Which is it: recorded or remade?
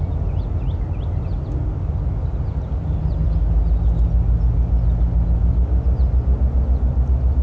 recorded